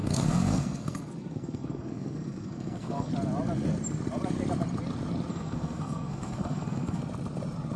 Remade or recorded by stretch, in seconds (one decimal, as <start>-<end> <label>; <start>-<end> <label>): 0.0-3.1 remade; 3.1-5.3 recorded; 5.3-7.0 remade; 7.0-7.8 recorded

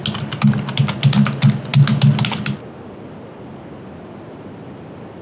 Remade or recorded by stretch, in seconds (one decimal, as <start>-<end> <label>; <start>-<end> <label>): 0.0-5.2 recorded

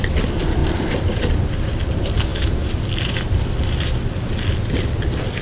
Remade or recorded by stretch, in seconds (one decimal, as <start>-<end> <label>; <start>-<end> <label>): 0.0-5.4 recorded

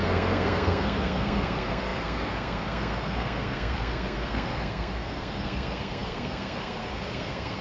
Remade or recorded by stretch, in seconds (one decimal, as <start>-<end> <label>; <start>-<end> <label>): 0.0-7.6 remade